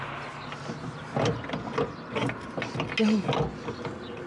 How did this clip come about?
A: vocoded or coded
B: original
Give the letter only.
B